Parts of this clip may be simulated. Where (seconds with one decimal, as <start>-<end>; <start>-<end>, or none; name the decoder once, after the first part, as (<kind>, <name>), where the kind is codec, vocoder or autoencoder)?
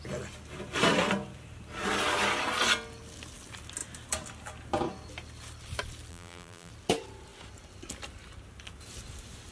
6.1-6.7 (vocoder, BigVGAN v2)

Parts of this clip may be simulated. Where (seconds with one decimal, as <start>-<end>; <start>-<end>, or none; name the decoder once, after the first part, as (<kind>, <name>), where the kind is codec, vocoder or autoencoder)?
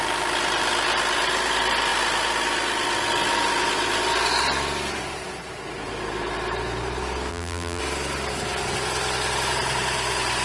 7.3-7.8 (vocoder, BigVGAN v2)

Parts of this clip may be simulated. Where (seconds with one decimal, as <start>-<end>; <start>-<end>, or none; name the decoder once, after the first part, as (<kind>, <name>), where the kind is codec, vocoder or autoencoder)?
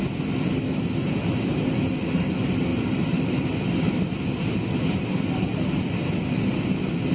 2.7-4.5 (vocoder, BigVGAN v2)